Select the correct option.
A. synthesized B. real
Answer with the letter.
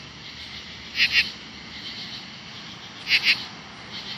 B